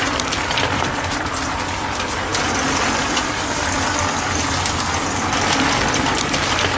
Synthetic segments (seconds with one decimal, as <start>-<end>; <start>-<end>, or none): none